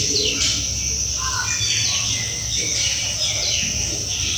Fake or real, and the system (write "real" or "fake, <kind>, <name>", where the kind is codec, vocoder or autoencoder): real